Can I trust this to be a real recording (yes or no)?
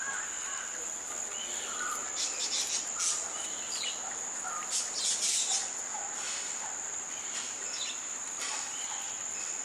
yes